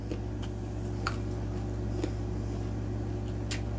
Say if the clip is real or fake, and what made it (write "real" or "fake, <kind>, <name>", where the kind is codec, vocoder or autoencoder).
real